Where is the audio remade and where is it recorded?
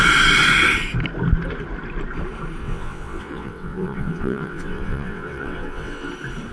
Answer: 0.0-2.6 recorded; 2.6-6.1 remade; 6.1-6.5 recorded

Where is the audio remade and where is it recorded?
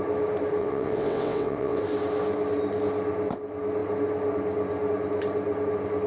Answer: 0.0-0.6 recorded; 0.6-1.8 remade; 1.8-6.1 recorded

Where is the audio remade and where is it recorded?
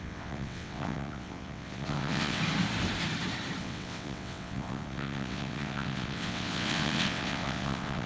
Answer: 0.0-2.4 remade; 2.4-3.6 recorded; 3.6-8.1 remade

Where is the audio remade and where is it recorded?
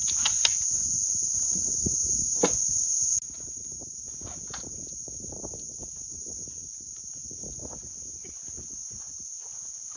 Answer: 0.0-10.0 recorded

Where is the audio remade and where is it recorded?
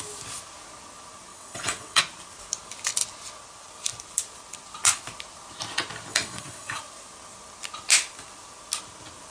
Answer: 0.0-1.3 recorded; 1.3-2.0 remade; 2.0-6.1 recorded; 6.1-6.8 remade; 6.8-9.3 recorded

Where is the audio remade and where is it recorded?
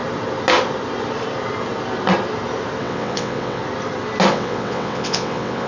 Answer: 0.0-2.8 recorded; 2.8-3.6 remade; 3.6-4.3 recorded; 4.3-5.7 remade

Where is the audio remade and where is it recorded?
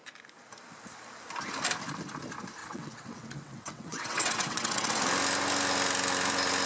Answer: 0.0-2.6 recorded; 2.6-5.0 remade; 5.0-6.7 recorded